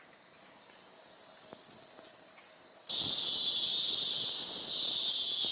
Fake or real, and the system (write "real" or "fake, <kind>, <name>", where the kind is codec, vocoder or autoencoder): real